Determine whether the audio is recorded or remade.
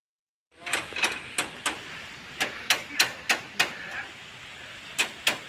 recorded